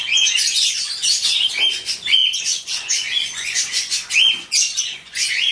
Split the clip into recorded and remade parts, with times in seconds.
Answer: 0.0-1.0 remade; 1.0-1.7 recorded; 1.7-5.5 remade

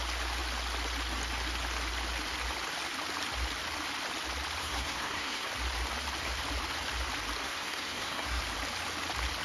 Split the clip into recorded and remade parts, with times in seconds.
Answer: 0.0-4.6 recorded; 4.6-5.5 remade; 5.5-7.4 recorded; 7.4-8.4 remade; 8.4-9.4 recorded